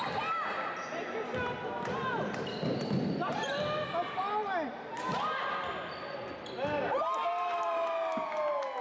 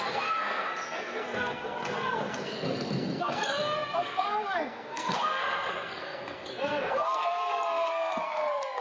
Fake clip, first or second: second